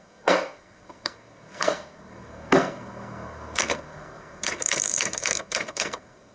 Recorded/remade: remade